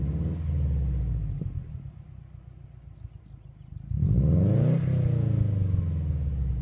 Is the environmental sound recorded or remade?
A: recorded